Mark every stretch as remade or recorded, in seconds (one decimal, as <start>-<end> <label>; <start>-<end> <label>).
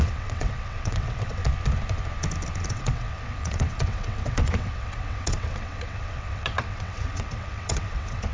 0.0-1.4 remade; 1.4-2.7 recorded; 2.7-8.3 remade